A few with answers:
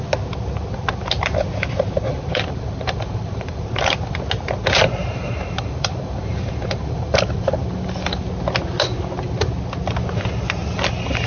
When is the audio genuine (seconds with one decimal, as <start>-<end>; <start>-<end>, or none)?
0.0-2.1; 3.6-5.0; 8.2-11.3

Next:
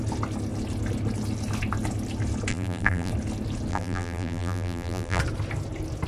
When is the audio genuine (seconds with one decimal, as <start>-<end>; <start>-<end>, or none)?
0.0-2.5; 3.1-3.7; 5.2-6.1

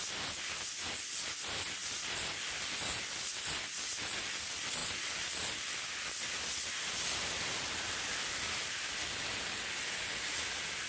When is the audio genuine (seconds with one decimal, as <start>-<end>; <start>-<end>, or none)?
0.0-1.8; 4.3-4.8; 8.3-10.9

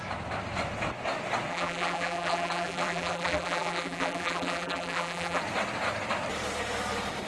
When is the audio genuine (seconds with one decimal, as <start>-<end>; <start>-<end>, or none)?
0.0-1.5; 5.4-7.3

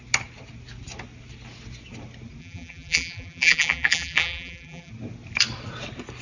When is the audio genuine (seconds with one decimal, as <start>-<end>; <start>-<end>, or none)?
0.0-2.4; 4.9-6.2

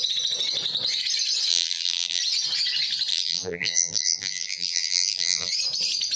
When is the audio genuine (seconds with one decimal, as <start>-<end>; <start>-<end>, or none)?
0.0-1.5; 2.2-3.1; 5.5-6.2